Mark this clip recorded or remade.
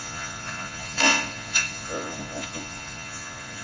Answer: remade